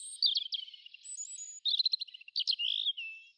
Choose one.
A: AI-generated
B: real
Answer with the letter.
B